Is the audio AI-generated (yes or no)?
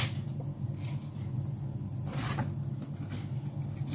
no